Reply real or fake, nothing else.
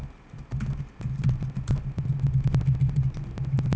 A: real